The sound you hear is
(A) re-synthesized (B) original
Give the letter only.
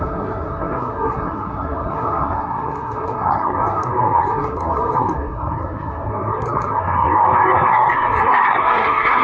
A